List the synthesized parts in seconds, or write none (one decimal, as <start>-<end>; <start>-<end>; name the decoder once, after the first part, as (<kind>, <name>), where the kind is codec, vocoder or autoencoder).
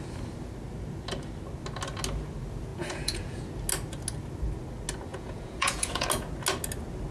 2.7-3.4 (vocoder, Vocos); 5.1-6.1